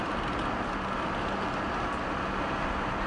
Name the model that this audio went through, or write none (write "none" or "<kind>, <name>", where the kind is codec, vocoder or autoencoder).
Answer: none